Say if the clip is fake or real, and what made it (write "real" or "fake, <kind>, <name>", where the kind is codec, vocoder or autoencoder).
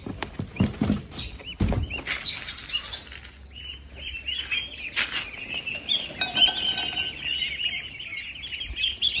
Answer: real